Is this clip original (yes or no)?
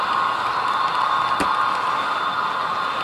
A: yes